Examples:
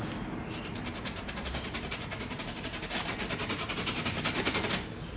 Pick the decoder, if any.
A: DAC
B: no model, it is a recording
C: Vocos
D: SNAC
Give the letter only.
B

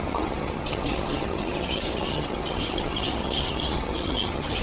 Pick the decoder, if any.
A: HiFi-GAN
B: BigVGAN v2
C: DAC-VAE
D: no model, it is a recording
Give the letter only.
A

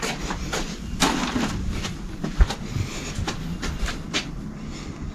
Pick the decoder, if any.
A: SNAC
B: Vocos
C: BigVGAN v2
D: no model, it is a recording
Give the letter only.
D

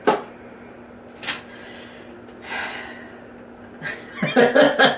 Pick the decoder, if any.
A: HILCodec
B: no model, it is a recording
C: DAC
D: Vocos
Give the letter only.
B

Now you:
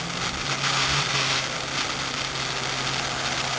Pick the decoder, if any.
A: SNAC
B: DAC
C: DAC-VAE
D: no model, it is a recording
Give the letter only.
D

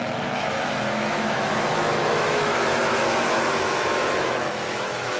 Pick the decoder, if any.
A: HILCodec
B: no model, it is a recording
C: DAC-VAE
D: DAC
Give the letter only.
C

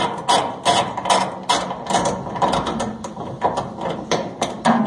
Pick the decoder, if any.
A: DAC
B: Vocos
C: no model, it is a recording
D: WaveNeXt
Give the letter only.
C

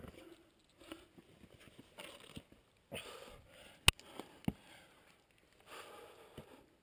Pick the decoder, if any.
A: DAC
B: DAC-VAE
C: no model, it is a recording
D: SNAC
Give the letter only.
C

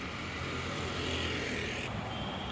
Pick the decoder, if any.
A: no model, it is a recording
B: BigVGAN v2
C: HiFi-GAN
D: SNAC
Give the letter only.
B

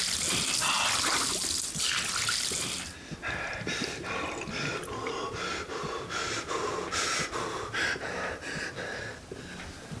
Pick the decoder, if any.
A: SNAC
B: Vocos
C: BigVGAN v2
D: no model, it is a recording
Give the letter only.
D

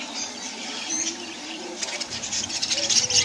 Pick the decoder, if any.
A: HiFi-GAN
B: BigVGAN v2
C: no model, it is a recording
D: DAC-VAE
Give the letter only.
B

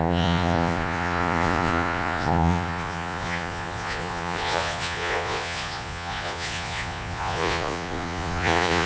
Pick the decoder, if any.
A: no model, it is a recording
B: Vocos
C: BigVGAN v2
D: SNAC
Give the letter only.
B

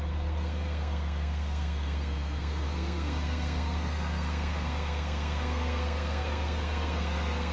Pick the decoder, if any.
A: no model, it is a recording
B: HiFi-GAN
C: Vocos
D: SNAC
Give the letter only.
D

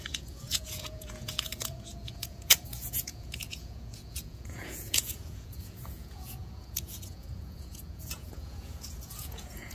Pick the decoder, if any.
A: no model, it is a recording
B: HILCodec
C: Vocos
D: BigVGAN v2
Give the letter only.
C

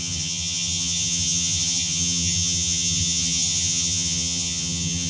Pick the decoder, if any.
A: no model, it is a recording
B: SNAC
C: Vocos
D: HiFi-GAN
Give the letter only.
D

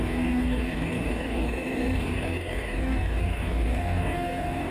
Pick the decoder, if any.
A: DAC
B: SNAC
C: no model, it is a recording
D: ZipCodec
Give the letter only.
A